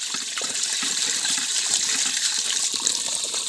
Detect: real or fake fake